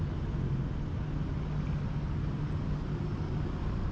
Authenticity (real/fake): real